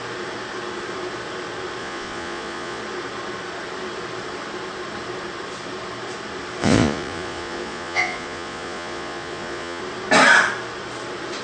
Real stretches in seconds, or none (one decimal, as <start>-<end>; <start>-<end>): 0.0-1.8; 2.8-6.6; 9.8-11.4